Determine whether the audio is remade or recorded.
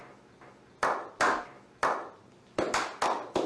recorded